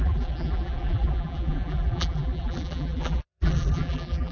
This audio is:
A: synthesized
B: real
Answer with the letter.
A